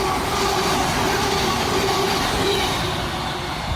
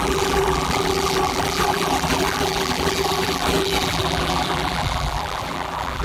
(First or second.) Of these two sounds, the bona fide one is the first